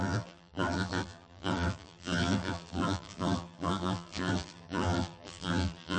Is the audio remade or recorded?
remade